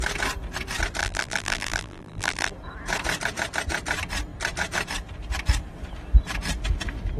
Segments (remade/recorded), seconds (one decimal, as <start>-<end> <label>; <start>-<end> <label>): 0.0-1.0 recorded; 1.0-2.5 remade; 2.5-7.2 recorded